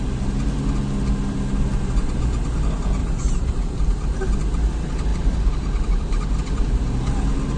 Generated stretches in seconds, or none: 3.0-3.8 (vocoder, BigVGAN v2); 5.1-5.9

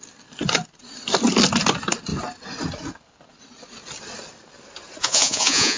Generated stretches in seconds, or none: 5.0-5.8 (vocoder, Vocos)

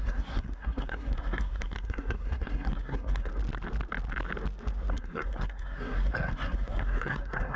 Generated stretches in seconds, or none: 0.0-3.3 (codec, SNAC); 4.9-7.6

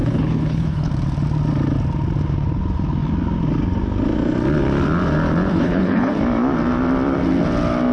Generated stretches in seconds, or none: 0.0-0.9 (codec, HILCodec); 5.5-6.2

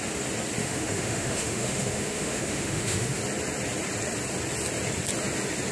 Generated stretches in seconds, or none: 0.6-3.2 (autoencoder, DAC-VAE)

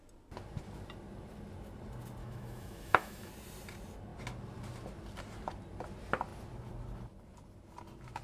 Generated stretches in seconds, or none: 2.2-3.3 (autoencoder, DAC-VAE)

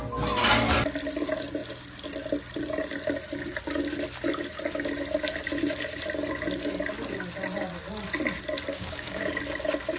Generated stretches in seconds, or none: 8.7-9.3 (codec, DAC)